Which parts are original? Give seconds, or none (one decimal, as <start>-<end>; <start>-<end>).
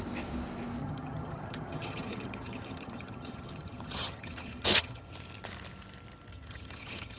0.0-0.8; 5.1-6.3